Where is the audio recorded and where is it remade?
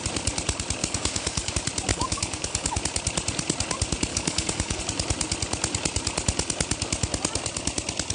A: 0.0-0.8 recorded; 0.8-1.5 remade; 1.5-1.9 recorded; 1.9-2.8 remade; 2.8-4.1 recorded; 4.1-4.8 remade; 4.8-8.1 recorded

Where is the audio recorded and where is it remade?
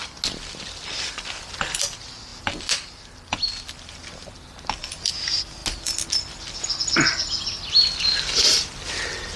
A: 0.0-9.4 recorded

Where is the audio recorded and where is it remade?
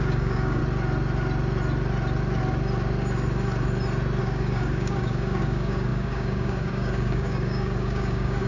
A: 0.0-0.6 remade; 0.6-4.2 recorded; 4.2-8.5 remade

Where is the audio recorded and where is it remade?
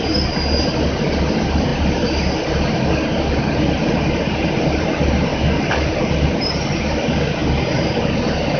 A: 0.0-5.3 recorded; 5.3-6.1 remade; 6.1-8.6 recorded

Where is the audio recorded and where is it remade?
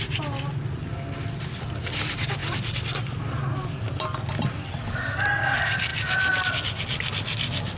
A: 0.0-7.8 recorded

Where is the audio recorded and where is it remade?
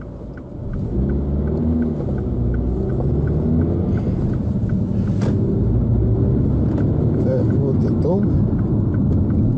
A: 0.0-9.6 recorded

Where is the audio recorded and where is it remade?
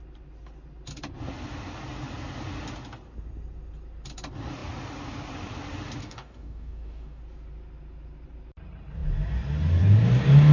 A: 0.0-6.0 recorded; 6.0-7.2 remade; 7.2-10.5 recorded